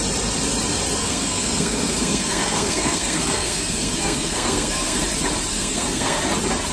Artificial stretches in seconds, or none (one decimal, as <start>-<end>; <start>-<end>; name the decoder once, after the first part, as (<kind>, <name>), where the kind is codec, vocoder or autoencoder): 1.0-5.0 (codec, SNAC); 5.5-6.2